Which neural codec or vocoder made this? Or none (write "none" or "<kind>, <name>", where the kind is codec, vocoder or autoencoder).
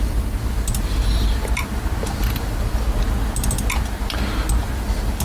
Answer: none